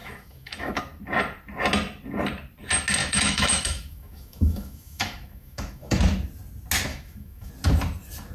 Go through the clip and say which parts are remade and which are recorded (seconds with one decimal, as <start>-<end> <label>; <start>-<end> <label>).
0.0-0.8 remade; 0.8-3.0 recorded; 3.0-6.0 remade; 6.0-6.9 recorded; 6.9-7.5 remade; 7.5-8.3 recorded